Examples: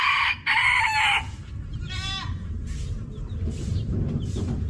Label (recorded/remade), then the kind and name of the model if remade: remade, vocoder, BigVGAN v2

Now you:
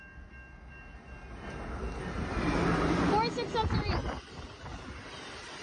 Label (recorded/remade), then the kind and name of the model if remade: recorded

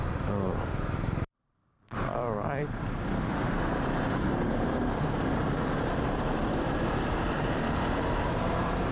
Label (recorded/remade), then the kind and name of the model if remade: remade, vocoder, BigVGAN v2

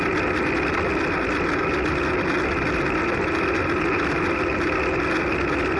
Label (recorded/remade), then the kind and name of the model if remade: recorded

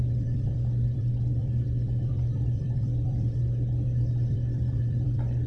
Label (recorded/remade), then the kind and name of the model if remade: remade, vocoder, BigVGAN v2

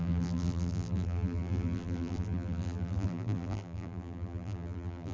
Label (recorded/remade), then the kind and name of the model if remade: remade, vocoder, BigVGAN v2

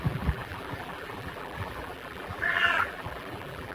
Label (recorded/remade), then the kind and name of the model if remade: remade, vocoder, BigVGAN v2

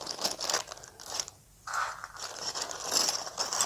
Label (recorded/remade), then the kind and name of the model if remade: recorded